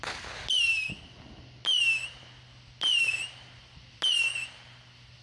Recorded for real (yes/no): yes